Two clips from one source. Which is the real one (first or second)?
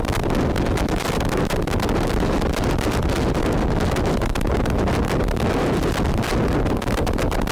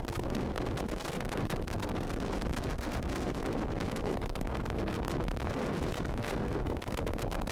first